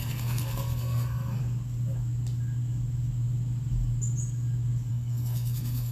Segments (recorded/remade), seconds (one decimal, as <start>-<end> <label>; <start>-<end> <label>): 0.0-1.4 remade; 1.4-4.9 recorded; 4.9-5.9 remade